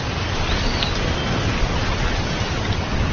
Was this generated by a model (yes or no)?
no